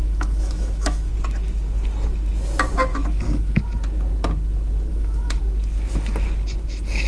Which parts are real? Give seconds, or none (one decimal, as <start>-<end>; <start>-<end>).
1.1-2.9; 3.6-4.9; 5.4-7.1

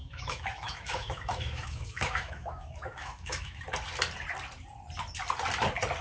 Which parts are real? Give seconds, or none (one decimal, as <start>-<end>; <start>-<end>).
3.6-6.0

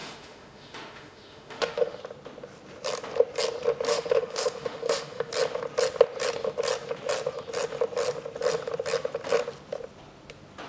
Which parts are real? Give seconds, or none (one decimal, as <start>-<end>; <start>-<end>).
2.0-3.9; 5.3-10.7

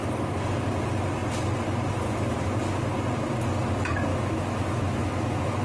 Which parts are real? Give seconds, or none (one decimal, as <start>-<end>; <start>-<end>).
0.0-4.1